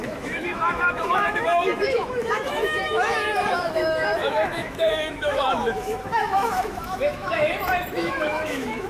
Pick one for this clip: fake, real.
fake